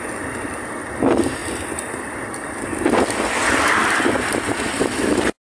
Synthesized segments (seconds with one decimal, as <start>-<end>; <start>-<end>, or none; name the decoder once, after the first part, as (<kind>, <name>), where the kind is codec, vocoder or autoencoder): none